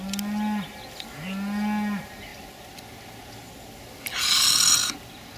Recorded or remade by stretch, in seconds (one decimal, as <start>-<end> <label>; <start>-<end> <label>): 0.0-5.4 recorded

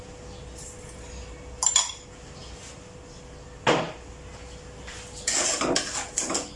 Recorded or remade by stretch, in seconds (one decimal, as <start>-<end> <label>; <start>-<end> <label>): 0.0-6.6 recorded

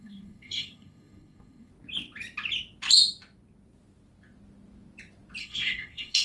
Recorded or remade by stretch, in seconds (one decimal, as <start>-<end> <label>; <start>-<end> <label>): 0.0-1.7 remade; 1.7-5.4 recorded; 5.4-6.2 remade

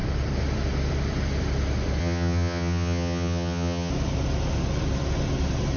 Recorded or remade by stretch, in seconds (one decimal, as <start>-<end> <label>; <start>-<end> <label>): 0.0-2.0 recorded; 2.0-3.9 remade; 3.9-5.8 recorded

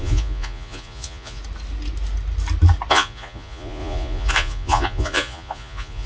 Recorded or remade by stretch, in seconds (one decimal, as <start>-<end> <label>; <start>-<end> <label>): 0.0-1.4 remade; 1.4-2.9 recorded; 2.9-6.1 remade

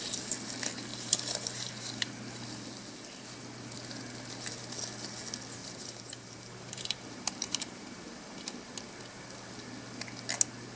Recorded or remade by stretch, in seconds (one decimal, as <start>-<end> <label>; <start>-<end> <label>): 0.0-0.9 recorded; 0.9-1.7 remade; 1.7-5.6 recorded; 5.6-8.5 remade; 8.5-10.8 recorded